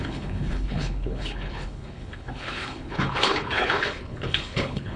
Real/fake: fake